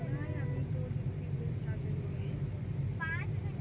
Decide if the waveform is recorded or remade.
recorded